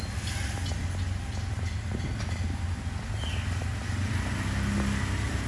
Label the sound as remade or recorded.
recorded